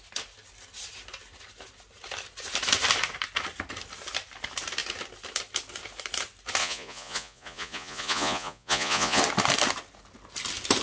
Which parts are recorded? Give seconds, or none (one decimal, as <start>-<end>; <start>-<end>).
0.0-6.6; 9.2-10.8